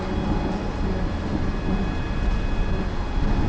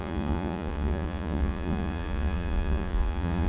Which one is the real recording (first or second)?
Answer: first